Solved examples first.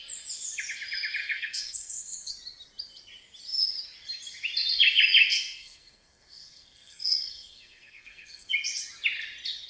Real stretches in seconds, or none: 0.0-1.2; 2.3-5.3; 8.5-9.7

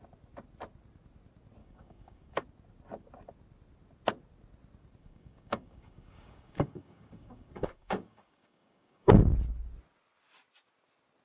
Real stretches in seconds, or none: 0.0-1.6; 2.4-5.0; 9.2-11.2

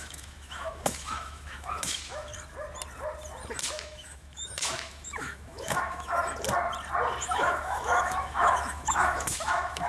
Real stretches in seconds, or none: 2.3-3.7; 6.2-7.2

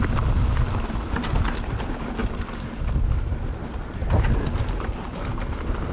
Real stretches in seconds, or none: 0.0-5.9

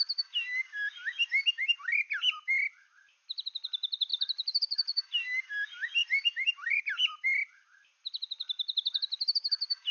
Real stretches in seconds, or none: 0.0-4.1; 5.5-6.0; 6.8-9.9

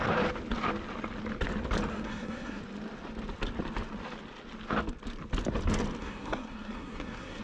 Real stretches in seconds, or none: 0.0-1.9; 2.6-6.0

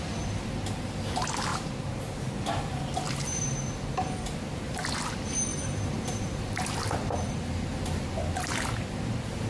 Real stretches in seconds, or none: 0.0-1.5; 2.3-5.5; 6.6-9.5

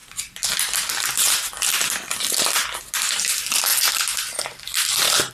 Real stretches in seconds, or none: 0.0-5.3